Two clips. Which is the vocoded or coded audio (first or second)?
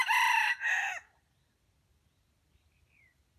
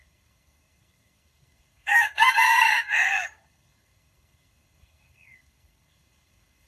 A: second